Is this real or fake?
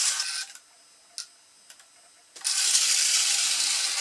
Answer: real